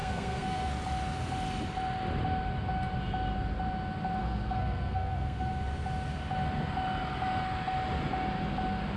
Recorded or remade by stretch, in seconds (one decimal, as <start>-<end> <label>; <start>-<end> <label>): 0.0-0.7 remade; 0.7-4.2 recorded; 4.2-5.5 remade; 5.5-9.0 recorded